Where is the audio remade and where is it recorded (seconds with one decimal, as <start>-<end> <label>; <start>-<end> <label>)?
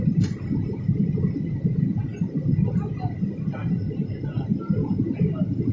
0.0-5.7 recorded